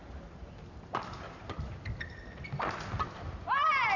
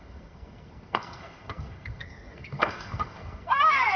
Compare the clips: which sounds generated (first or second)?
second